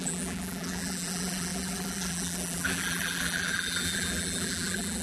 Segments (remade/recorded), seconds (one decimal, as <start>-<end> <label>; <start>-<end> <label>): 0.0-5.0 remade